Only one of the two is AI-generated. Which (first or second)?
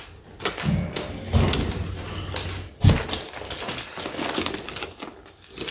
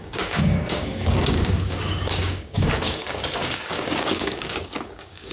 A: second